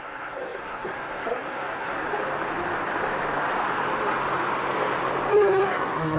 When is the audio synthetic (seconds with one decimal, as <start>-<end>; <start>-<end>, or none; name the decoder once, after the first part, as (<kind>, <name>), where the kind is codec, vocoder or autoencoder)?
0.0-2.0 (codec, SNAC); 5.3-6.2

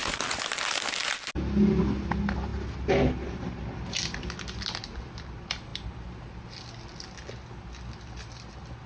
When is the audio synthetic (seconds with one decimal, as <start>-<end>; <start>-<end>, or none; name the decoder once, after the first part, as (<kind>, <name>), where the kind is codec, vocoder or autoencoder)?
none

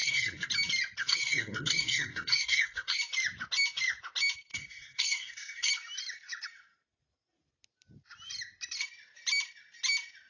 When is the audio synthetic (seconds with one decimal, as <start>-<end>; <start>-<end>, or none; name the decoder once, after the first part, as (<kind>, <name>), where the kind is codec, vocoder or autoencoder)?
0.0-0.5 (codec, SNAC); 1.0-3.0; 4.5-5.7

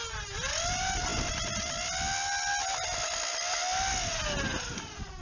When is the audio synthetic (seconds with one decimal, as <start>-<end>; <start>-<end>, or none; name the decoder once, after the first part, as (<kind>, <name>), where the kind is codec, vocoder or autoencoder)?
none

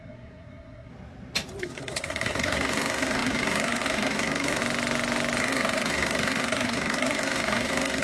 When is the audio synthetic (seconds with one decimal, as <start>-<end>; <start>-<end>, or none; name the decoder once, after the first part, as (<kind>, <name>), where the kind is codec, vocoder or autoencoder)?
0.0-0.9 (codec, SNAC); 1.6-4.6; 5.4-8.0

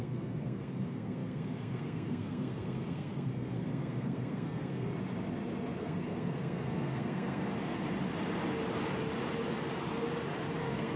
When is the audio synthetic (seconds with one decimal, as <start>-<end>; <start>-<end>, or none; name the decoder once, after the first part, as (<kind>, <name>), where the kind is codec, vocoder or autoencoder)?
0.0-4.9 (codec, SNAC); 5.8-7.5; 10.6-11.0

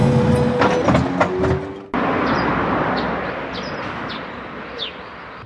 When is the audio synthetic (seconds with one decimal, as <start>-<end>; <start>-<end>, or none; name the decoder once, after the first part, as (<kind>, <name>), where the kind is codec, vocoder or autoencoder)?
none

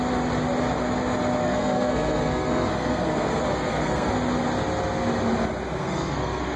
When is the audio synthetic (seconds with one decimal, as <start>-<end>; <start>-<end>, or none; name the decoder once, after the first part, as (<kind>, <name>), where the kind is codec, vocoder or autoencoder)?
1.4-4.1 (codec, SNAC); 5.8-6.6